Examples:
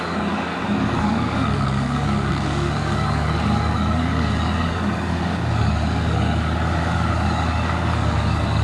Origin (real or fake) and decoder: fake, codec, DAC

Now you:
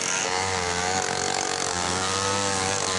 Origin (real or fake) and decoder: fake, codec, DAC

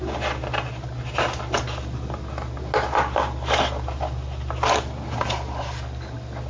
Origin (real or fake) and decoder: real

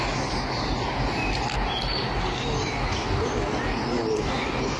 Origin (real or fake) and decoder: real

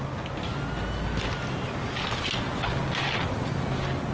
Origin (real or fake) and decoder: real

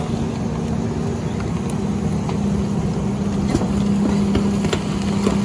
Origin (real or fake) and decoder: real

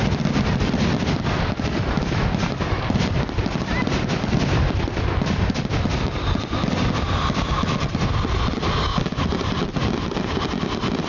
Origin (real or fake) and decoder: real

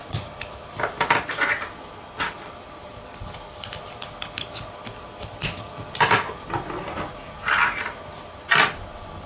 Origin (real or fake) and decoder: real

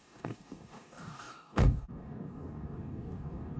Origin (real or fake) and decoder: fake, codec, DAC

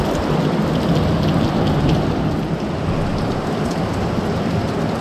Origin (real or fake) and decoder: real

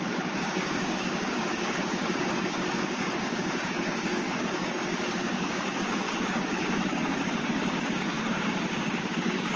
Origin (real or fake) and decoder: fake, codec, DAC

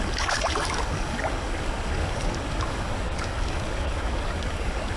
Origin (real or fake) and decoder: fake, codec, DAC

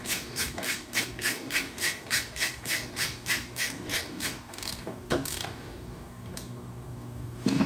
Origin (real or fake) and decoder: fake, codec, DAC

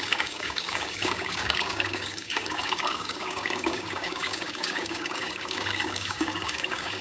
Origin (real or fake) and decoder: fake, codec, DAC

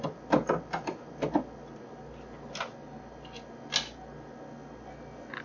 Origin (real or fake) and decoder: real